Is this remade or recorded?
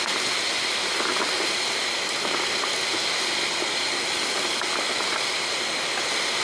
recorded